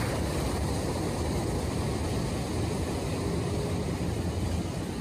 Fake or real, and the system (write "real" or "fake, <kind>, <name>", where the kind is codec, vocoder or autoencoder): real